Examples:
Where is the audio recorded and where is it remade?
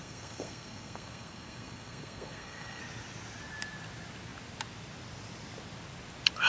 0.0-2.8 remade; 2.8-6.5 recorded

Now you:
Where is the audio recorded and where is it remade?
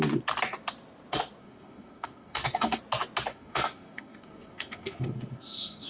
0.0-1.4 recorded; 1.4-2.8 remade; 2.8-3.3 recorded; 3.3-5.9 remade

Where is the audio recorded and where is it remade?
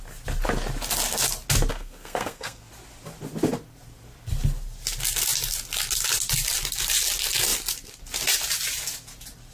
0.0-1.7 recorded; 1.7-2.7 remade; 2.7-9.5 recorded